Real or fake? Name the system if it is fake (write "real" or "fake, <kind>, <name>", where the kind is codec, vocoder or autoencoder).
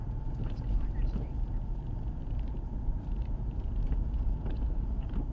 fake, vocoder, BigVGAN v2